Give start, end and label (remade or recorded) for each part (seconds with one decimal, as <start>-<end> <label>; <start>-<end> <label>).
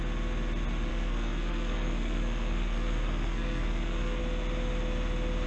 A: 0.0-0.9 recorded; 0.9-4.2 remade; 4.2-5.5 recorded